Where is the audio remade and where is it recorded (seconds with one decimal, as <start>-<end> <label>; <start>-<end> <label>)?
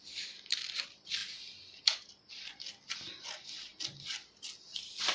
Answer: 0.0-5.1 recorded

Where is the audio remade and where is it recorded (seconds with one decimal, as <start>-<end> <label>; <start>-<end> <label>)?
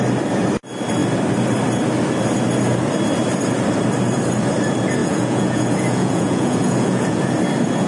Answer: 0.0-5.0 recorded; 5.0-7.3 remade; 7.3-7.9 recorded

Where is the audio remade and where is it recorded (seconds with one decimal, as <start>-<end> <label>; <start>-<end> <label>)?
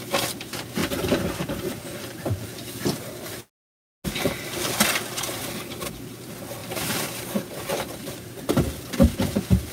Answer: 0.0-0.8 recorded; 0.8-1.8 remade; 1.8-6.6 recorded; 6.6-8.4 remade; 8.4-9.7 recorded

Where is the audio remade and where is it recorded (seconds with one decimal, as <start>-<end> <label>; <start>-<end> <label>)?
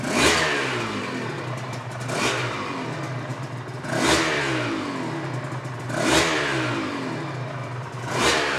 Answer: 0.0-8.6 recorded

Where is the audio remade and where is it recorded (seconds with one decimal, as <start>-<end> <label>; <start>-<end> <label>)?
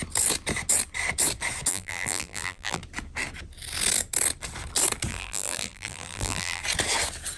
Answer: 0.0-1.7 recorded; 1.7-2.8 remade; 2.8-5.1 recorded; 5.1-6.6 remade; 6.6-7.4 recorded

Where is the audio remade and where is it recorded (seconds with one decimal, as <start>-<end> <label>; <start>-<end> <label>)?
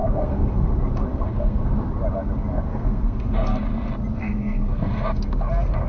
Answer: 0.0-0.7 remade; 0.7-1.1 recorded; 1.1-1.7 remade; 1.7-2.5 recorded; 2.5-3.6 remade; 3.6-4.2 recorded; 4.2-5.5 remade; 5.5-5.9 recorded